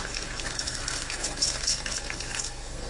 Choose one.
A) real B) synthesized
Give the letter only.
B